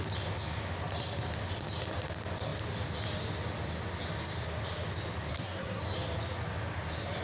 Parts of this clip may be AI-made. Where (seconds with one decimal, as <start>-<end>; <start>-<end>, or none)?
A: 5.3-5.8